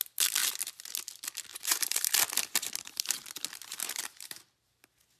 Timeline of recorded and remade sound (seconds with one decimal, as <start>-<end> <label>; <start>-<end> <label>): 0.0-1.5 recorded; 1.5-2.1 remade; 2.1-3.8 recorded; 3.8-4.4 remade; 4.4-5.2 recorded